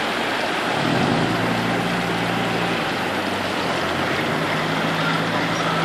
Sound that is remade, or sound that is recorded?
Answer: recorded